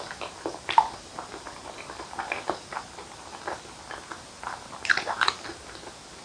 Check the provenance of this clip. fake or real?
real